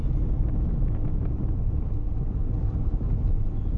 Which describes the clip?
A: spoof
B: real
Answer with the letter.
B